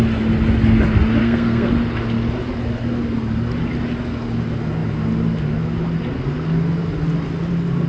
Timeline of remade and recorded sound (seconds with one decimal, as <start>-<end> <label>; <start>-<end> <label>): 0.0-1.2 recorded; 1.2-1.7 remade; 1.7-7.9 recorded